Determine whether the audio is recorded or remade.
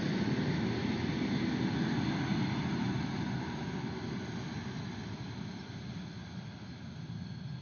recorded